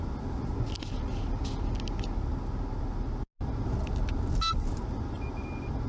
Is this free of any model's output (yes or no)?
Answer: yes